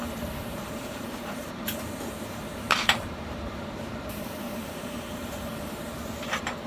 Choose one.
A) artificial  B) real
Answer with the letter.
A